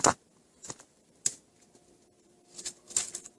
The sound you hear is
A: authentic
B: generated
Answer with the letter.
A